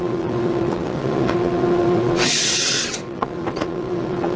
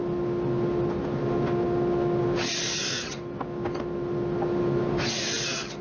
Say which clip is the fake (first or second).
first